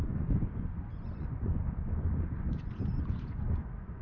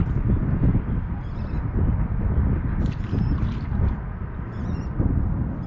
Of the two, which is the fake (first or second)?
first